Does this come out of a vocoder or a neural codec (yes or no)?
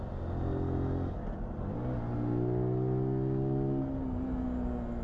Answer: no